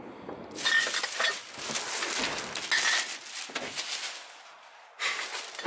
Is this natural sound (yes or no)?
yes